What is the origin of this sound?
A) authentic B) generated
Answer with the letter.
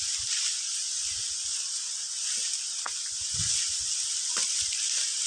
A